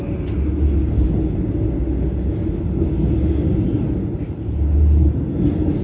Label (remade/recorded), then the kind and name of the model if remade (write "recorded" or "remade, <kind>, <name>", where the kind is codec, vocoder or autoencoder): recorded